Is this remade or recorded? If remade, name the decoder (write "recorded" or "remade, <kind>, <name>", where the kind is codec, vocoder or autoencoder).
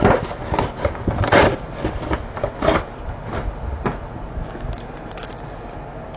recorded